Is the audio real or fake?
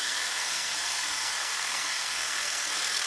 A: fake